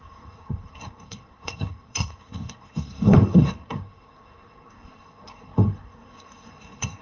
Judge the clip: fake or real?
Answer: fake